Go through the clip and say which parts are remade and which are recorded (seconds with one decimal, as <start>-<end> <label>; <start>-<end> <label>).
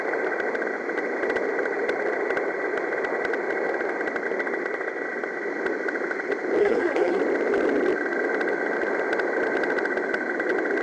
0.0-6.6 recorded; 6.6-7.2 remade; 7.2-10.8 recorded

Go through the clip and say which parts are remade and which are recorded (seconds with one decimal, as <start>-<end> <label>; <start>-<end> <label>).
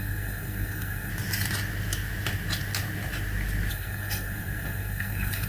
0.0-1.1 remade; 1.1-3.7 recorded; 3.7-5.5 remade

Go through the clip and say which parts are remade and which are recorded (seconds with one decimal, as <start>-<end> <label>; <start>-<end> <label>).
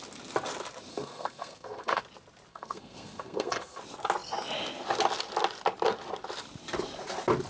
0.0-0.9 recorded; 0.9-2.0 remade; 2.0-2.5 recorded; 2.5-3.8 remade; 3.8-7.5 recorded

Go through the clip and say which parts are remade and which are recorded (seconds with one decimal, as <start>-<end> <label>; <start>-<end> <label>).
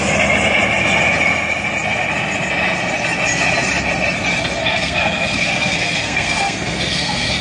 0.0-4.6 recorded; 4.6-7.4 remade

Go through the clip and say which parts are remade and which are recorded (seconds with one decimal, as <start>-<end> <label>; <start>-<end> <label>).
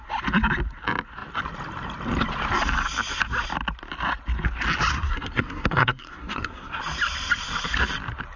0.0-4.9 recorded; 4.9-6.8 remade; 6.8-8.4 recorded